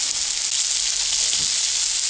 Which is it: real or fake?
real